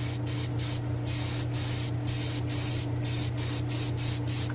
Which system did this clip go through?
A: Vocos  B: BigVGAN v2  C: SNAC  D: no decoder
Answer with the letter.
D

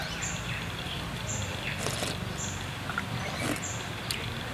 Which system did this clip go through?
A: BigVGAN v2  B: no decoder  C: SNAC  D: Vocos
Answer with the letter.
B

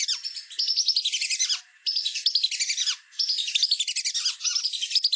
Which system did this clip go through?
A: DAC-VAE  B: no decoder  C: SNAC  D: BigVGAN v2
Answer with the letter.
B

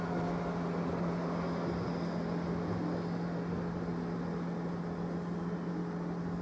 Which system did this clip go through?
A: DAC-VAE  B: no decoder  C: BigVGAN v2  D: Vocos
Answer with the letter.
B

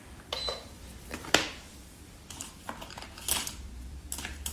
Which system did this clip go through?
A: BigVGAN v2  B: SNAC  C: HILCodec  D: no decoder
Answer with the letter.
A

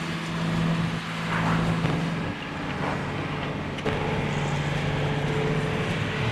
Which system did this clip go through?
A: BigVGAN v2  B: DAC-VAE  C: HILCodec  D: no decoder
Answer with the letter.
D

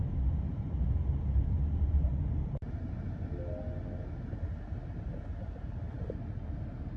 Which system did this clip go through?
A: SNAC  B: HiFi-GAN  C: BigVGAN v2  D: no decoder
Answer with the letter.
D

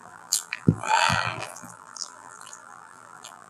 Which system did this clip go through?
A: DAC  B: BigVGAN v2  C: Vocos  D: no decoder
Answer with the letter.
B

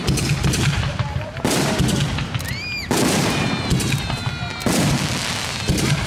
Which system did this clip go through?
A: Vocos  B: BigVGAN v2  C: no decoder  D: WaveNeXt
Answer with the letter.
C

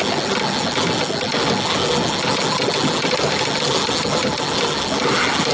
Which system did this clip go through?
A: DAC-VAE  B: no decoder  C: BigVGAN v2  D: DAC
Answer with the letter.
B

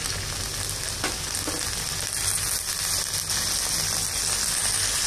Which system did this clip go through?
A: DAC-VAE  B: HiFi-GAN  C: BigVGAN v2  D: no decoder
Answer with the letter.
D